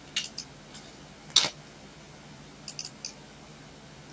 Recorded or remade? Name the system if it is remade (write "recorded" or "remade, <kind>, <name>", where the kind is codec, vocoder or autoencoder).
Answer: recorded